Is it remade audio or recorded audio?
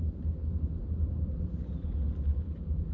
recorded